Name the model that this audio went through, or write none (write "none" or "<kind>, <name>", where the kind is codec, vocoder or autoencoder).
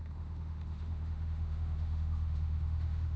autoencoder, DAC-VAE